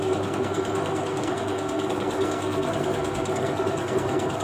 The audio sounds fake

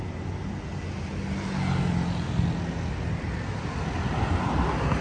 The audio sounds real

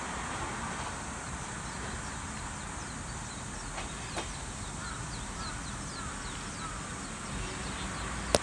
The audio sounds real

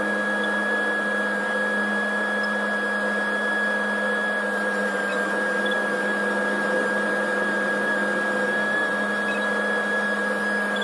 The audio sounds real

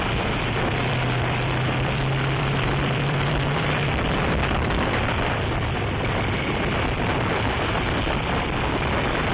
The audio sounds fake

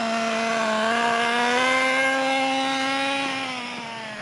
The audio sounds real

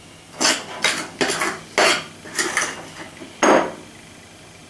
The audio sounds real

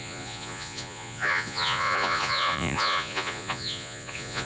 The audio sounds fake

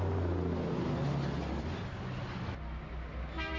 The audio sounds real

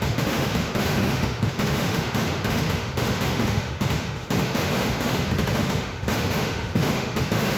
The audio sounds fake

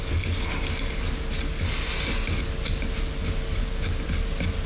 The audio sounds real